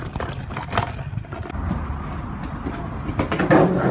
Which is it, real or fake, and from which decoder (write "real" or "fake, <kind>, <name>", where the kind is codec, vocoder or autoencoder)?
real